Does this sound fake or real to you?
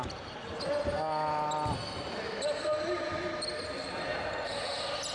real